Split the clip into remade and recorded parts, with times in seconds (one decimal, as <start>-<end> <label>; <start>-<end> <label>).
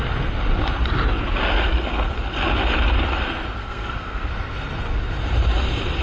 0.0-3.6 recorded; 3.6-4.3 remade; 4.3-6.0 recorded